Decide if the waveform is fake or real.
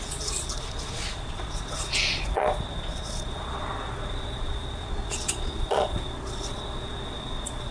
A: fake